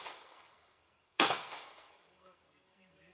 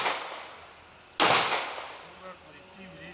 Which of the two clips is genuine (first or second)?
second